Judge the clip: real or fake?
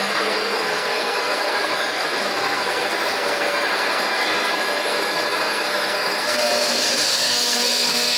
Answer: fake